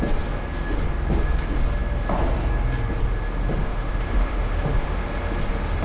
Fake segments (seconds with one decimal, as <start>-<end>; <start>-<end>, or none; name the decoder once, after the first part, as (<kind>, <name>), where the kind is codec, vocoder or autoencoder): 3.6-5.0 (autoencoder, DAC-VAE)